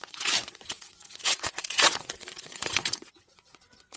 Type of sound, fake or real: fake